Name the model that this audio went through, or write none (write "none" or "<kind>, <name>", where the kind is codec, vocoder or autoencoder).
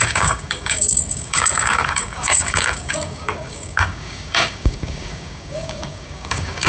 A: codec, DAC